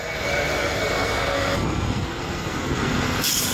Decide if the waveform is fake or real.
fake